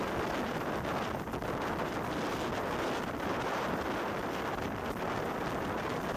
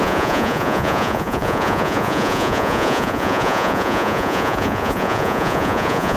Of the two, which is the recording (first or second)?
first